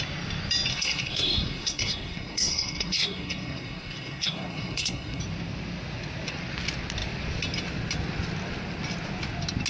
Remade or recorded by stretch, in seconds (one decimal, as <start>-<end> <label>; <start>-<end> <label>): 0.0-0.7 recorded; 0.7-5.2 remade; 5.2-9.7 recorded

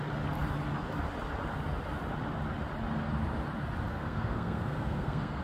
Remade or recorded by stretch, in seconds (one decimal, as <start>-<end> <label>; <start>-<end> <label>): 0.0-3.9 recorded; 3.9-5.4 remade

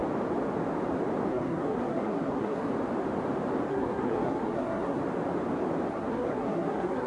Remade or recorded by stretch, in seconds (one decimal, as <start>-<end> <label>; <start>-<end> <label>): 0.0-1.3 recorded; 1.3-2.7 remade; 2.7-3.7 recorded; 3.7-5.0 remade; 5.0-5.9 recorded; 5.9-7.1 remade

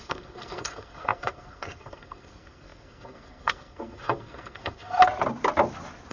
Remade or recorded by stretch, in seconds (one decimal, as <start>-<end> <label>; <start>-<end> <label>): 0.0-5.0 remade; 5.0-6.1 recorded

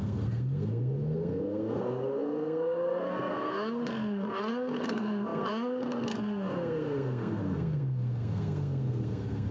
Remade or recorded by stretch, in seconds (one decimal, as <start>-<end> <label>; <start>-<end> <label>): 0.0-9.5 remade